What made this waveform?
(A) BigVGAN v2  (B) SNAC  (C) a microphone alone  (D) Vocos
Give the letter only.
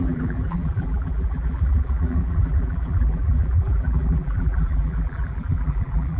A